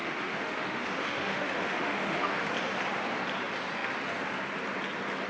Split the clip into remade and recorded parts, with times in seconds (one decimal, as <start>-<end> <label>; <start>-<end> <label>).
0.0-2.5 remade; 2.5-5.3 recorded

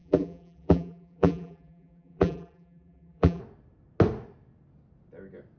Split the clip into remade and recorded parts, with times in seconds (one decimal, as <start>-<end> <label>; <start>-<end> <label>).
0.0-3.4 remade; 3.4-5.6 recorded

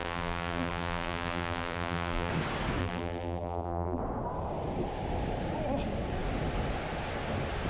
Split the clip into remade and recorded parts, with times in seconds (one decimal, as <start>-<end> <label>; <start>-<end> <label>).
0.0-2.3 remade; 2.3-2.8 recorded; 2.8-4.0 remade; 4.0-7.7 recorded

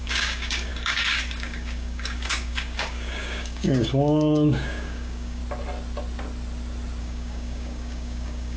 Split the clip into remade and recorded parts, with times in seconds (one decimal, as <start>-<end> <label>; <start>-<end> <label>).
0.0-5.4 remade; 5.4-7.0 recorded; 7.0-8.6 remade